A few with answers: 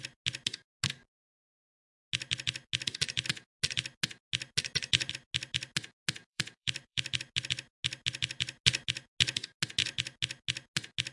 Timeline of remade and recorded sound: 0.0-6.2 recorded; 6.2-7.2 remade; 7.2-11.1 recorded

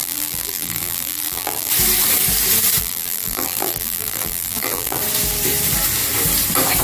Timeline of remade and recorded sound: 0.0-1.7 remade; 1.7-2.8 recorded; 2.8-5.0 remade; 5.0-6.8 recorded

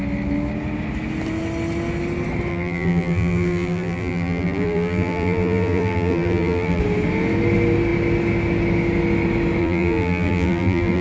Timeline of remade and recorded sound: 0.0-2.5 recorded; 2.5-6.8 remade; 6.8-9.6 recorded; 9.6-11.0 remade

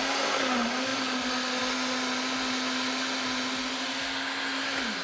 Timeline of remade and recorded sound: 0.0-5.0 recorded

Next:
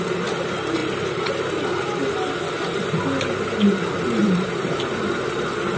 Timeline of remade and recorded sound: 0.0-0.8 recorded; 0.8-1.3 remade; 1.3-4.2 recorded; 4.2-5.8 remade